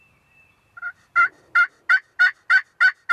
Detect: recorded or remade recorded